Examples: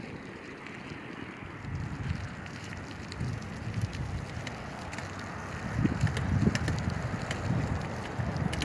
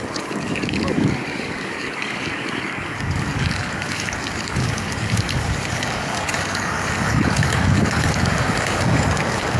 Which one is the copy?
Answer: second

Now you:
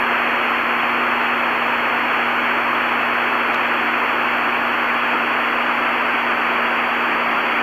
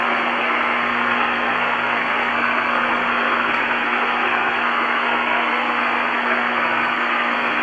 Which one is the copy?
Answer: second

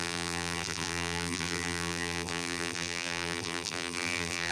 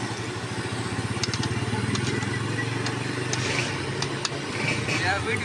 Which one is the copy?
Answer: first